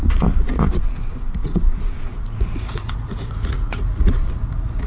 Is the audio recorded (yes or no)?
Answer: no